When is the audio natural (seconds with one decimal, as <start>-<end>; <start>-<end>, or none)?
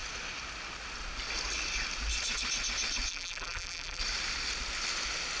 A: 0.0-3.1; 4.0-5.4